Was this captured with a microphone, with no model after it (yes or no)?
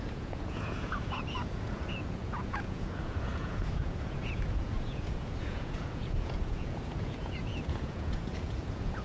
no